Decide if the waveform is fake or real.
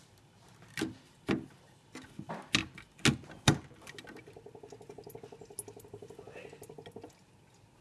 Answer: real